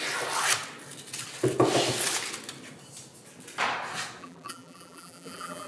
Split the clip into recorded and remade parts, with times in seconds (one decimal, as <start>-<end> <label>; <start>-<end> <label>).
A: 0.0-4.2 recorded; 4.2-5.7 remade